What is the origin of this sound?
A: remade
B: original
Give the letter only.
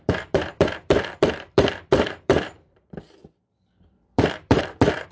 A